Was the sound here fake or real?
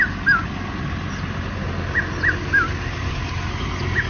real